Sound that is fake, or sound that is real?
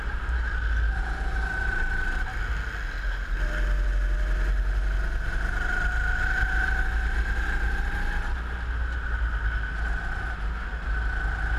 real